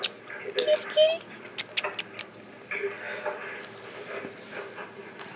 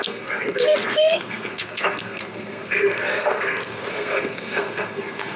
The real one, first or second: first